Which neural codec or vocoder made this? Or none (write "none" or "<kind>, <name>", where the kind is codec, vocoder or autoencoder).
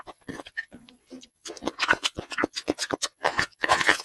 vocoder, Vocos